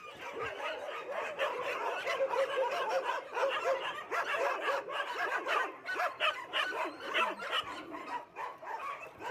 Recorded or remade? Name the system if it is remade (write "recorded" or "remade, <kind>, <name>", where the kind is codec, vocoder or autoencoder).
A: recorded